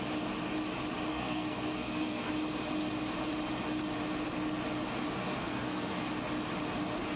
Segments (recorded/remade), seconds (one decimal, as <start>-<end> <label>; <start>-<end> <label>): 0.0-1.1 recorded; 1.1-2.3 remade; 2.3-5.2 recorded; 5.2-6.1 remade; 6.1-7.2 recorded